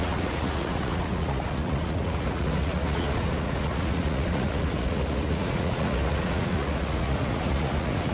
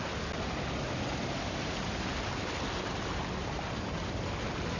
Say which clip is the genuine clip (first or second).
second